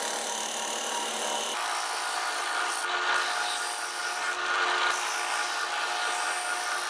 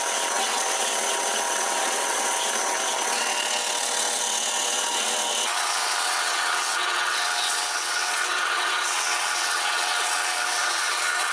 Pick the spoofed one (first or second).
second